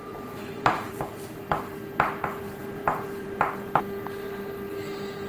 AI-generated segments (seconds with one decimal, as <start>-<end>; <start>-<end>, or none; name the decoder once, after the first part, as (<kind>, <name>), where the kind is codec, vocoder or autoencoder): 0.0-1.0 (vocoder, BigVGAN v2); 2.6-3.4